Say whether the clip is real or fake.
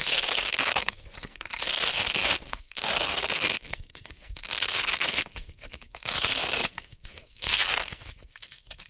fake